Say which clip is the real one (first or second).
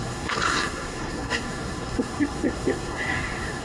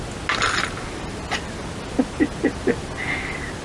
second